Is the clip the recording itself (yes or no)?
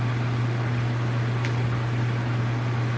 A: yes